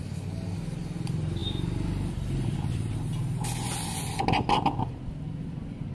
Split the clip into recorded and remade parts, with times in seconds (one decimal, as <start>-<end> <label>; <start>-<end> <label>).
0.0-5.9 recorded